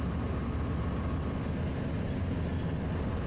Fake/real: real